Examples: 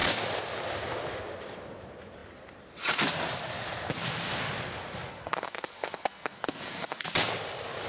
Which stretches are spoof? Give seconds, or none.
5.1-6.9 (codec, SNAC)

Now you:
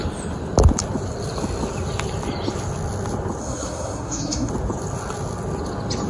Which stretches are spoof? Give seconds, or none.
3.4-4.5 (codec, SNAC)

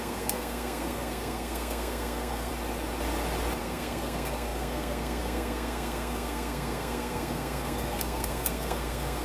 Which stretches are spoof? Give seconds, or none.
0.0-2.5 (codec, SNAC); 3.6-9.2

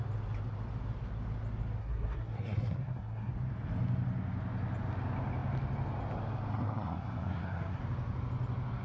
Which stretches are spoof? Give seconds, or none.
1.8-3.3 (codec, SNAC); 6.5-7.8

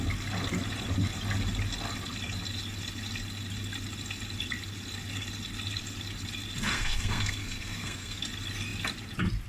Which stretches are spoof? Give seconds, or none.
6.7-8.2 (codec, SNAC)

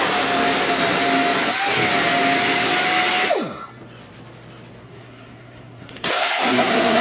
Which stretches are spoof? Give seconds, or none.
4.8-7.0 (codec, SNAC)

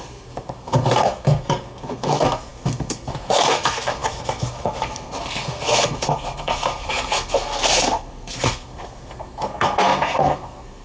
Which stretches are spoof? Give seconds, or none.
0.0-10.8 (codec, SNAC)